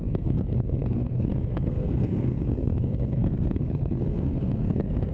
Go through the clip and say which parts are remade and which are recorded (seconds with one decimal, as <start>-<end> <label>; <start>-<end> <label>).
0.0-5.1 remade